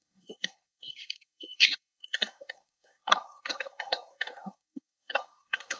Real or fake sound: fake